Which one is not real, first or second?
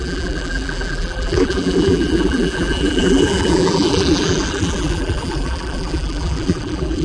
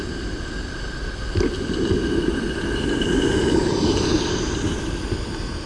first